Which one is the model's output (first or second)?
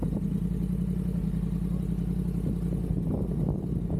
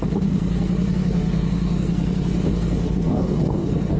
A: second